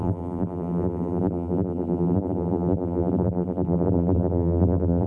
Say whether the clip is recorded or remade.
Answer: remade